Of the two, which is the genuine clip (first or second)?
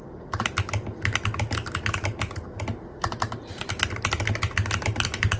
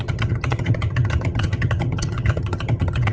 first